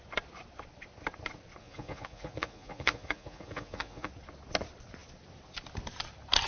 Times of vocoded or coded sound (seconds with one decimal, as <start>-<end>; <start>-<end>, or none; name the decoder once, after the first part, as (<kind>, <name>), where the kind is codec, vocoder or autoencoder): 1.6-4.1 (vocoder, Vocos)